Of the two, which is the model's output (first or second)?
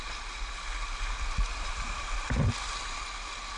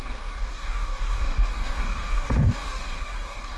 second